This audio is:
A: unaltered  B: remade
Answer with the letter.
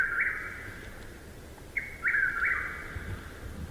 A